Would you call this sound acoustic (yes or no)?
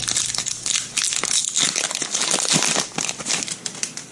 yes